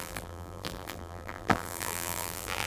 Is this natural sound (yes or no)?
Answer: no